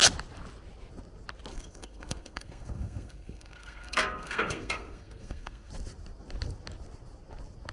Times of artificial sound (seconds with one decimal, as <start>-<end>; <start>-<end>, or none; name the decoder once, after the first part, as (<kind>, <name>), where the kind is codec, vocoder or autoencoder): 1.5-5.7 (codec, SNAC)